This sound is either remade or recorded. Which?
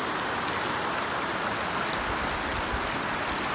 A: recorded